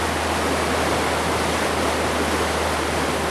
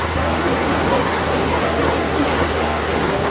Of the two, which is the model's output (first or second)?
second